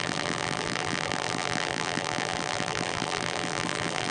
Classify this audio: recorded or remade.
remade